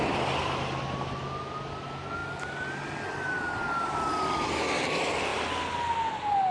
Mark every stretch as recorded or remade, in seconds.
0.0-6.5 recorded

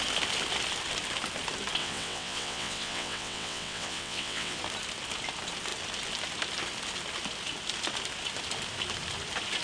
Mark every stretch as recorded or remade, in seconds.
0.0-1.8 recorded; 1.8-4.6 remade; 4.6-9.6 recorded

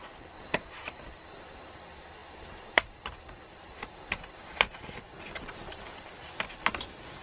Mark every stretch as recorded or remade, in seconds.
0.0-7.2 recorded

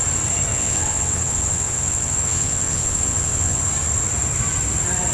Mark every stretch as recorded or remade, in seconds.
0.0-0.5 recorded; 0.5-3.6 remade; 3.6-5.1 recorded

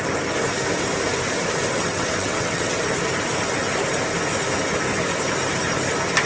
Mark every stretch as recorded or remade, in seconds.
0.0-1.7 recorded; 1.7-2.8 remade; 2.8-6.3 recorded

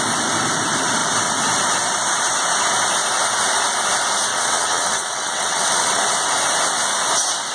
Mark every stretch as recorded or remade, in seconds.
0.0-4.3 recorded; 4.3-6.0 remade; 6.0-7.5 recorded

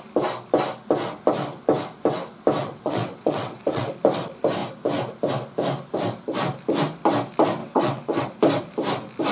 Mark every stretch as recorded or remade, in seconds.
0.0-2.6 recorded; 2.6-3.9 remade; 3.9-7.6 recorded; 7.6-8.3 remade; 8.3-9.3 recorded